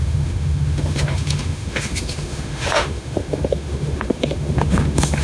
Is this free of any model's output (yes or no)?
no